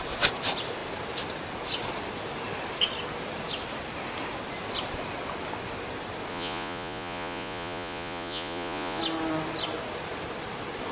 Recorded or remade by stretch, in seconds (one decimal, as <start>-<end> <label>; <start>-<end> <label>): 0.0-6.3 recorded; 6.3-9.0 remade; 9.0-10.9 recorded